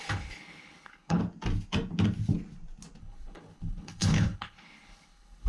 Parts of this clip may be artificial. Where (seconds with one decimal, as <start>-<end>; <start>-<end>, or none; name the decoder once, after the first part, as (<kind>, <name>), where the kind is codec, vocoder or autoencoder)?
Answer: 0.0-1.2 (codec, HILCodec); 3.0-5.5